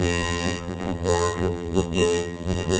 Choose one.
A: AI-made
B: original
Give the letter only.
A